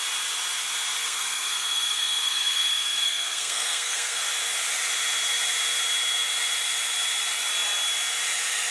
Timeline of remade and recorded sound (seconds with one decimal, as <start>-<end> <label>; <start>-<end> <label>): 0.0-1.0 recorded; 1.0-4.2 remade; 4.2-8.7 recorded